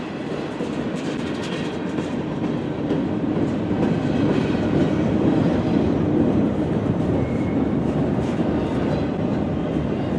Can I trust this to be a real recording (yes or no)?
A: no